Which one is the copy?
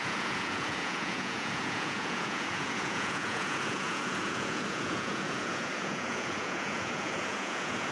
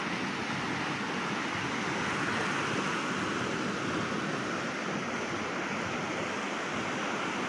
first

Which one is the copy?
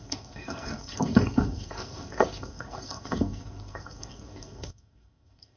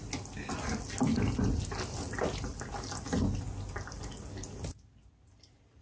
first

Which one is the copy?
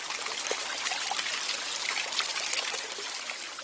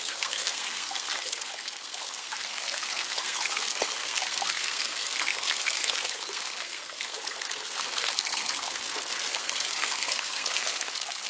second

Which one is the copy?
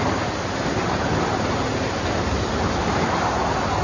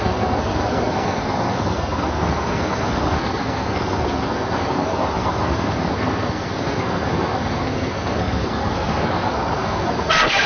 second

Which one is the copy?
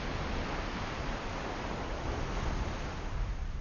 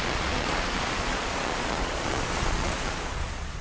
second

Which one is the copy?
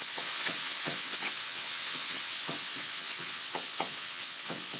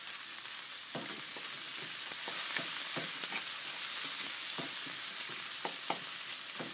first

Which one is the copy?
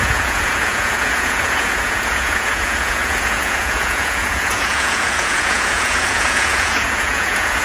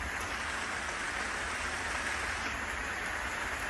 first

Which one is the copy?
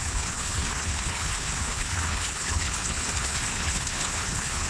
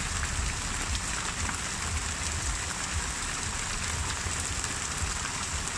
first